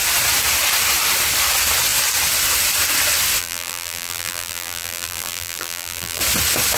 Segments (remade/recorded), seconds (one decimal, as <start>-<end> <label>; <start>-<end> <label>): 0.0-3.4 recorded; 3.4-6.2 remade; 6.2-6.8 recorded